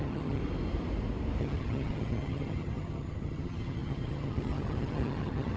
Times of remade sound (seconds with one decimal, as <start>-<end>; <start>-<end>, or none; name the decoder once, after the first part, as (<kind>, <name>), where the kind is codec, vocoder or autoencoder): 0.0-0.4 (vocoder, HiFi-GAN); 1.4-5.6